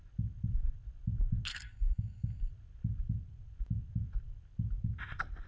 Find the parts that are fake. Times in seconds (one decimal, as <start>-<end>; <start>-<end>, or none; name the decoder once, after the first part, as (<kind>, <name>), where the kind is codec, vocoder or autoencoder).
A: 1.5-2.5 (codec, SNAC)